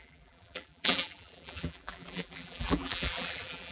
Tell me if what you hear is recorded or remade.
remade